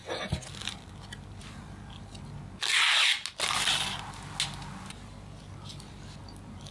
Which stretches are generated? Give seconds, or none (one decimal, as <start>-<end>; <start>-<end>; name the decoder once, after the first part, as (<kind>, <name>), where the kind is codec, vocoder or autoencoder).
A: none